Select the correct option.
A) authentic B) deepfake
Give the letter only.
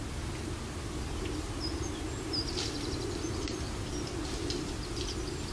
A